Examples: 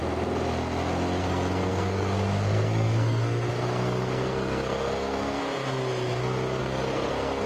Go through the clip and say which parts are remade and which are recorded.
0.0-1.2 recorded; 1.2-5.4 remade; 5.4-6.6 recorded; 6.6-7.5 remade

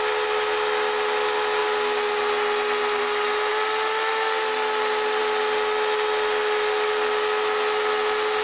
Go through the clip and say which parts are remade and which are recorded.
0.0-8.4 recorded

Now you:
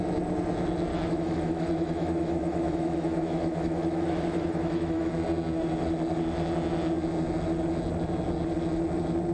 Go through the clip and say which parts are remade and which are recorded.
0.0-0.9 recorded; 0.9-5.1 remade; 5.1-9.3 recorded

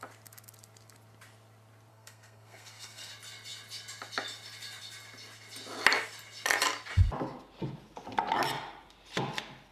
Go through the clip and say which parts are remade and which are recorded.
0.0-1.9 recorded; 1.9-3.1 remade; 3.1-9.7 recorded

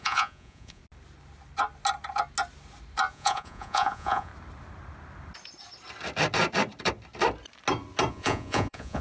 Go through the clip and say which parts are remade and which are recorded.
0.0-0.8 remade; 0.8-3.1 recorded; 3.1-4.3 remade; 4.3-8.1 recorded; 8.1-9.0 remade

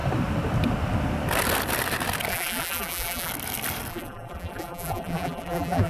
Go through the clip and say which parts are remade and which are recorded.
0.0-2.3 recorded; 2.3-3.3 remade; 3.3-3.9 recorded; 3.9-5.9 remade